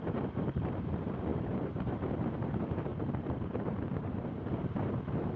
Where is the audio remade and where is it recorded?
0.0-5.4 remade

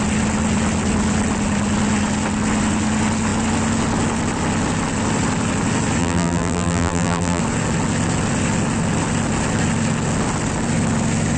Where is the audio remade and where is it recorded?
0.0-6.0 recorded; 6.0-7.4 remade; 7.4-11.4 recorded